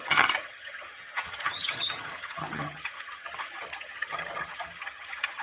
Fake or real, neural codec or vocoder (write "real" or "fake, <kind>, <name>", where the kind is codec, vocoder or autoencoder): fake, vocoder, HiFi-GAN